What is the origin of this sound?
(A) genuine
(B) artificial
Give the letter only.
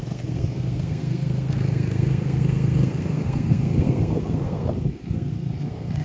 B